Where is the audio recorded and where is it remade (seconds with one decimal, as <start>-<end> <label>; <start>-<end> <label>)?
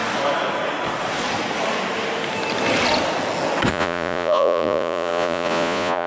0.0-3.7 recorded; 3.7-6.1 remade